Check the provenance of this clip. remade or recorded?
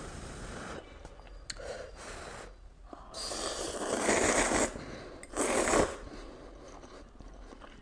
recorded